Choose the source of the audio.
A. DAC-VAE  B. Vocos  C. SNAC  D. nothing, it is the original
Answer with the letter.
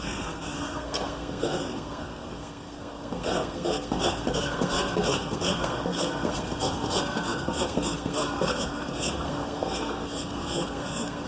C